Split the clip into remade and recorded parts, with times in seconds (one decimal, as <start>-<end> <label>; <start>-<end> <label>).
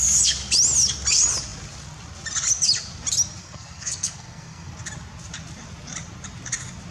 0.0-3.4 recorded; 3.4-4.7 remade; 4.7-6.9 recorded